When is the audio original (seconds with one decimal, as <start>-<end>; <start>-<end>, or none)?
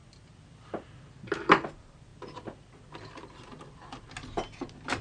1.0-2.1; 4.1-5.0